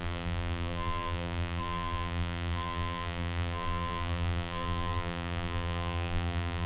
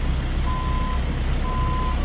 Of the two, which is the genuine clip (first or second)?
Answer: second